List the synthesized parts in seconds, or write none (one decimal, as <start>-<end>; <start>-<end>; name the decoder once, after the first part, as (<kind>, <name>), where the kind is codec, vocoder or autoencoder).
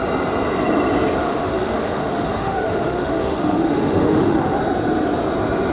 1.2-4.6 (autoencoder, DAC-VAE)